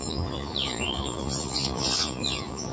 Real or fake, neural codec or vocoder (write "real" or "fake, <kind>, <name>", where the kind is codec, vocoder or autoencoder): fake, vocoder, Vocos